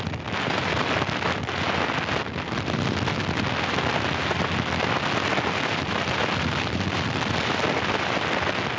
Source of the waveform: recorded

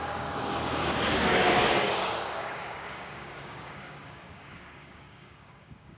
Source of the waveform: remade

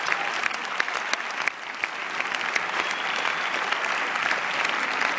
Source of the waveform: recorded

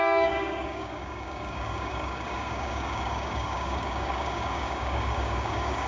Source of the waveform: remade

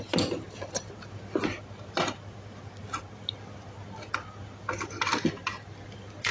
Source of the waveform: recorded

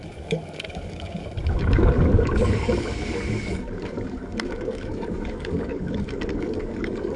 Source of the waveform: remade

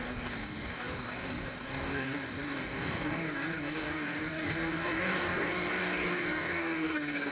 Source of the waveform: remade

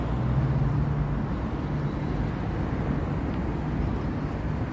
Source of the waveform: recorded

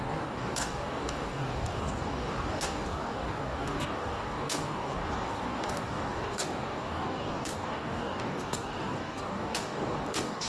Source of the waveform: remade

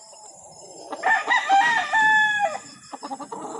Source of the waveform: recorded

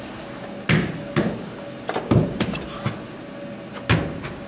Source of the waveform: recorded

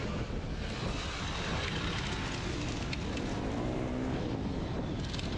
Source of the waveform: recorded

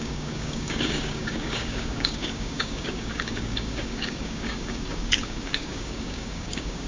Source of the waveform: remade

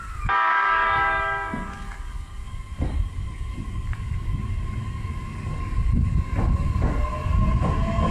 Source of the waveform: remade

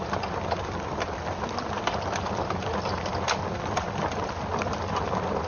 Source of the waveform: recorded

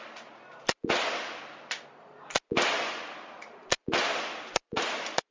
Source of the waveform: recorded